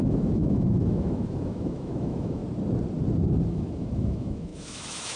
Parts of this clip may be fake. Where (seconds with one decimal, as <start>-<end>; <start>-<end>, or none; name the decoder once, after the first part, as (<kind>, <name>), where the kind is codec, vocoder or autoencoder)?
0.0-2.4 (autoencoder, DAC-VAE); 3.5-5.2